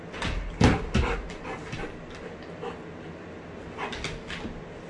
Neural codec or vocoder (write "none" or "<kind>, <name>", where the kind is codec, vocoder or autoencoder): none